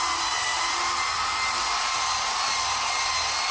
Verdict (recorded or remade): recorded